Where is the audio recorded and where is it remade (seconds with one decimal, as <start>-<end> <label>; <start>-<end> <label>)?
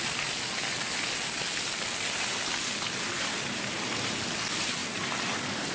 0.0-5.7 recorded